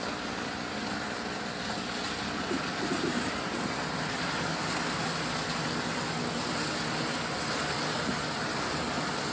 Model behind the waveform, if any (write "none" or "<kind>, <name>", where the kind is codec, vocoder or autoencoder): none